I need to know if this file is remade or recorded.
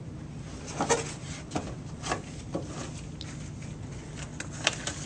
recorded